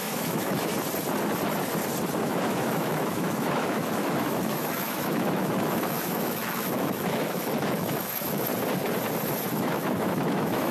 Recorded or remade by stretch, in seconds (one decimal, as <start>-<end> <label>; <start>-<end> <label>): 0.0-0.7 remade; 0.7-2.1 recorded; 2.1-8.5 remade; 8.5-9.5 recorded; 9.5-10.7 remade